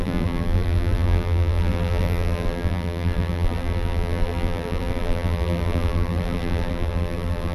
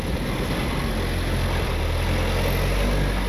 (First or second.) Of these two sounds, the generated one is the first